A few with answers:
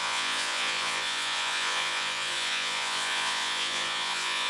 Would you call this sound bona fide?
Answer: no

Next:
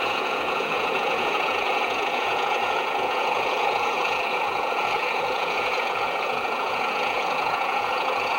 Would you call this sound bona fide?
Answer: no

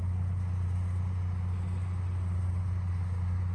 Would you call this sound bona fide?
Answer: yes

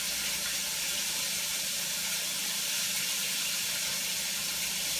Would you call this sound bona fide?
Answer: yes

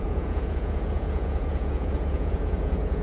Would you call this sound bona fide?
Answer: no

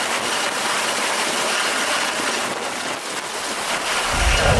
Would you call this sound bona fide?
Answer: yes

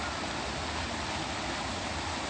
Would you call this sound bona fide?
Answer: yes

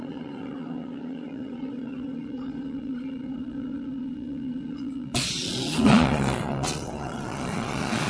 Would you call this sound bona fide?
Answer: no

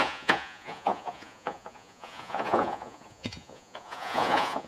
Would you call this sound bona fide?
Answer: no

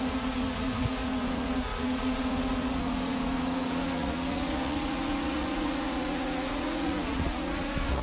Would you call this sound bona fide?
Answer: no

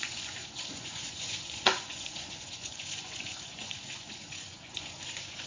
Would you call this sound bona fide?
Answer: no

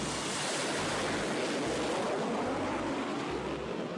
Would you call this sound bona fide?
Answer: yes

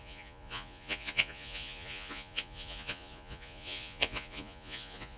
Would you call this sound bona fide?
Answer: no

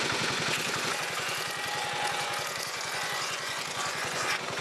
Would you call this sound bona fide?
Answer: no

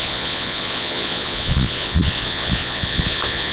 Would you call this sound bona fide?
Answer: no